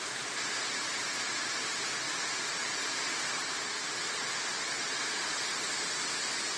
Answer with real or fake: real